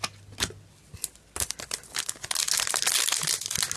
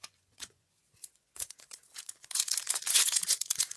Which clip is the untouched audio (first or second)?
first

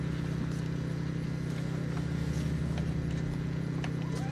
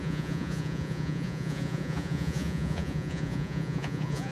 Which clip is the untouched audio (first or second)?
first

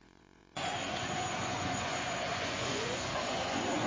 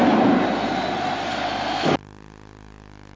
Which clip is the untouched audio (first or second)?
second